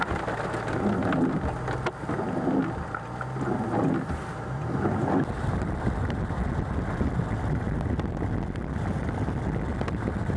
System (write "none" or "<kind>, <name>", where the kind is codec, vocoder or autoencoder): none